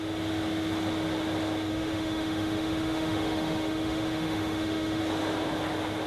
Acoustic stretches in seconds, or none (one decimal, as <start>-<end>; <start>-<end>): 0.0-1.7; 5.0-6.1